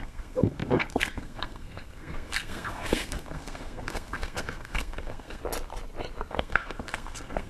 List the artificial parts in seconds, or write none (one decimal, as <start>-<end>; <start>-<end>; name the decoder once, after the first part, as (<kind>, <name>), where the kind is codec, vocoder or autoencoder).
0.0-5.4 (codec, SNAC); 6.3-7.5